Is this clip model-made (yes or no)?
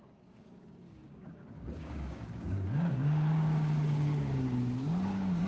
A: yes